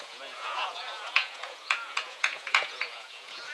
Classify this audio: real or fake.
fake